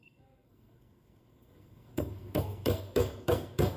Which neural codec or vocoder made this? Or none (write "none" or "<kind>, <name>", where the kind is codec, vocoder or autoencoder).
codec, SNAC